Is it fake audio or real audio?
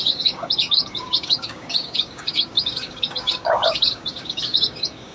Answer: fake